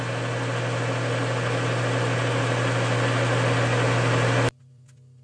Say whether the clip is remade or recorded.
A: recorded